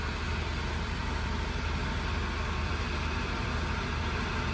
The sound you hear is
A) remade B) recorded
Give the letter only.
B